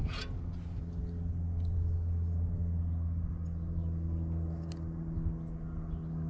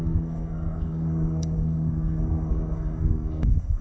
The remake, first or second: second